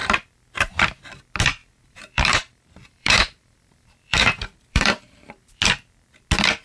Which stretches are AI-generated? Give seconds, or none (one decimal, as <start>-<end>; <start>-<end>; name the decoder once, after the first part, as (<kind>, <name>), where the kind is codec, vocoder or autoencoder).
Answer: 1.6-5.6 (vocoder, BigVGAN v2)